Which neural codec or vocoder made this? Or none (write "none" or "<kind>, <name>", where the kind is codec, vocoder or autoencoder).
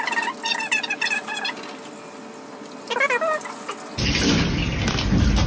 none